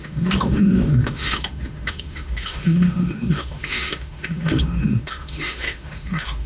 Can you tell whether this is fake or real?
fake